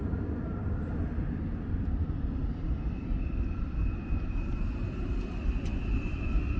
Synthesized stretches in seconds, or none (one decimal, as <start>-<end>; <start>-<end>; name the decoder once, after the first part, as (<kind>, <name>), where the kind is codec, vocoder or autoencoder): 2.4-6.6 (vocoder, BigVGAN v2)